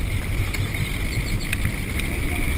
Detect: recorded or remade recorded